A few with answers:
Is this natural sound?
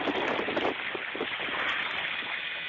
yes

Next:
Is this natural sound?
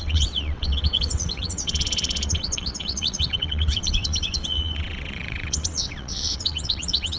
no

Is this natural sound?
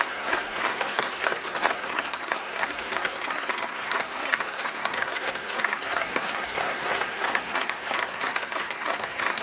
no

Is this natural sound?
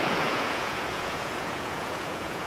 no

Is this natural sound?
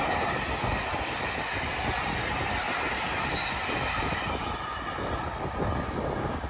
yes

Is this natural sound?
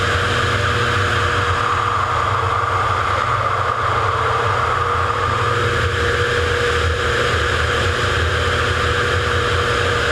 yes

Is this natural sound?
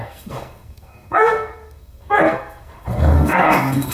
no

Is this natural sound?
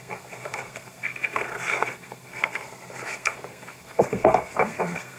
no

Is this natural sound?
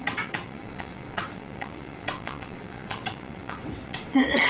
no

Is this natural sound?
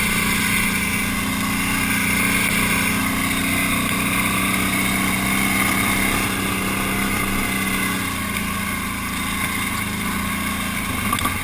yes